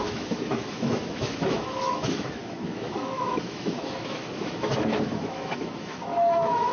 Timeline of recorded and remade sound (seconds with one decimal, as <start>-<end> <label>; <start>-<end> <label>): 0.0-6.7 remade